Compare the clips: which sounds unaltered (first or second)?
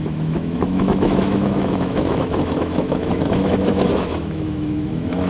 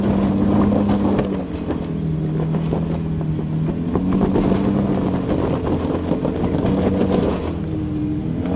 second